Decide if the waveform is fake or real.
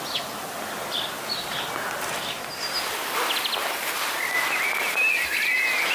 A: real